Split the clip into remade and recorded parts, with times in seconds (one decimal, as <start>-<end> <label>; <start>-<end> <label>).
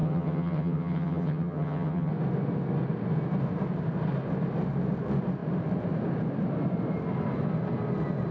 0.0-2.1 remade; 2.1-8.3 recorded